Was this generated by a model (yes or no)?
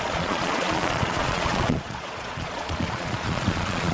yes